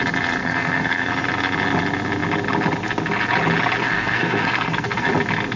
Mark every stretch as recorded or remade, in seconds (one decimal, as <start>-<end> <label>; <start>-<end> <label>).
0.0-0.4 recorded; 0.4-1.1 remade; 1.1-3.8 recorded; 3.8-5.1 remade; 5.1-5.6 recorded